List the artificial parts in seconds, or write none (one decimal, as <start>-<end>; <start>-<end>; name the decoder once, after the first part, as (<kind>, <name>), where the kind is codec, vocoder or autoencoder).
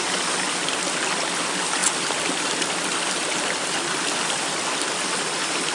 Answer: none